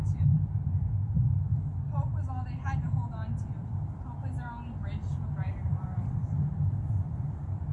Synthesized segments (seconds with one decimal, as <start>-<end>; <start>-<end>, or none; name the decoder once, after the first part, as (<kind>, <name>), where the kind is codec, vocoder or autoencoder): 0.0-7.7 (vocoder, BigVGAN v2)